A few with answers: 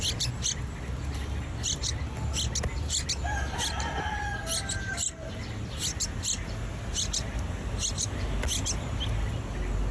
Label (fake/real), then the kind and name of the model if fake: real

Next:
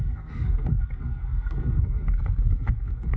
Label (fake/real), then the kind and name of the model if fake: fake, codec, SNAC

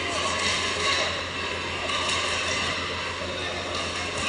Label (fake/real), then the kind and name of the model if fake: real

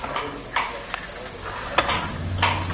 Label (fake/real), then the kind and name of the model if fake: real